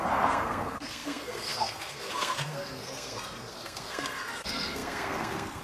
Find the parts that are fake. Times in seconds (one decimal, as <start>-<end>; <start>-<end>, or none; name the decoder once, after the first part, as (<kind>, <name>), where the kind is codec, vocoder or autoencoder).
0.0-5.6 (codec, SNAC)